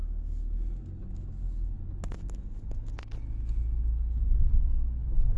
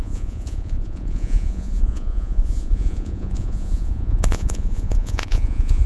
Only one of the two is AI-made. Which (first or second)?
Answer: second